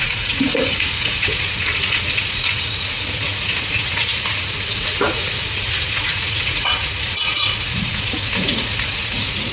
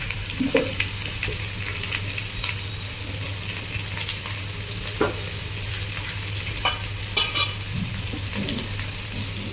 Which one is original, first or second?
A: second